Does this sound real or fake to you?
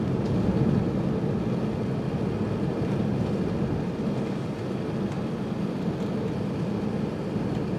real